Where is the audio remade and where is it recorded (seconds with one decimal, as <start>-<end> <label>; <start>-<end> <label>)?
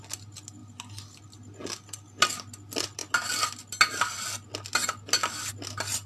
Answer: 0.0-6.1 recorded